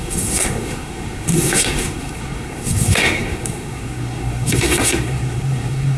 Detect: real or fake fake